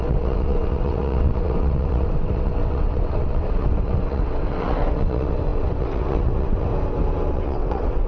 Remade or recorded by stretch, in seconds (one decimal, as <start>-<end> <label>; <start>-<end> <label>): 0.0-6.7 remade; 6.7-7.3 recorded; 7.3-8.1 remade